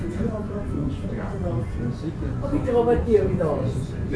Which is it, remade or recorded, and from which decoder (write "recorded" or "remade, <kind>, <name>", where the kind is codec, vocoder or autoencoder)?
remade, vocoder, Vocos